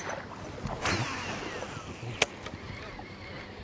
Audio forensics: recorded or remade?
recorded